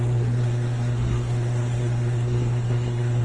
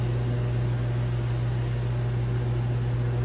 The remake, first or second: first